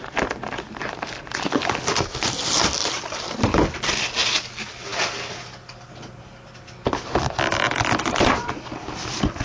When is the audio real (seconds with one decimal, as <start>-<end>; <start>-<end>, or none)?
0.0-9.4